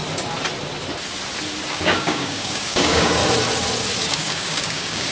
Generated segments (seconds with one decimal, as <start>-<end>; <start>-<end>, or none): 1.7-3.2; 4.0-5.1